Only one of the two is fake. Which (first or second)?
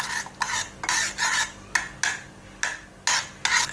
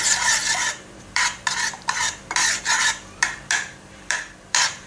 second